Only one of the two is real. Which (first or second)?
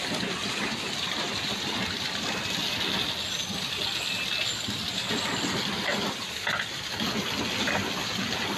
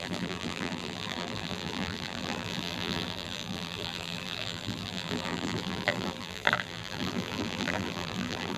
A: first